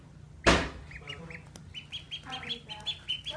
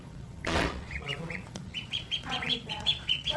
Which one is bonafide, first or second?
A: first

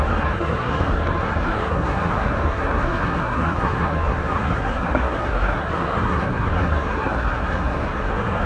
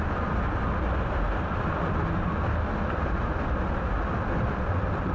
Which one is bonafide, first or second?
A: second